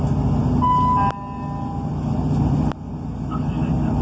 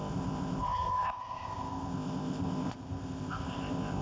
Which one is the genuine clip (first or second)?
first